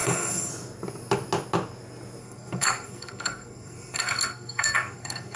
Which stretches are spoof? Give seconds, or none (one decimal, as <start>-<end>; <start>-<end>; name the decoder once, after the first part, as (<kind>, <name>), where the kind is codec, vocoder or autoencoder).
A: 0.0-0.5 (codec, SNAC); 2.2-5.4